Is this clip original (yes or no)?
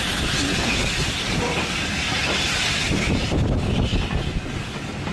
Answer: yes